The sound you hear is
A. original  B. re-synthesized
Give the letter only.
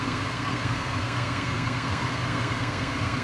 B